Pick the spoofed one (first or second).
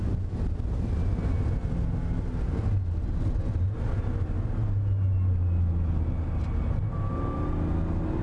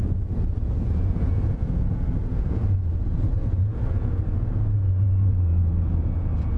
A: second